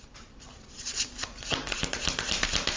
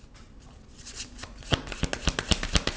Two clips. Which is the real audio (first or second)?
second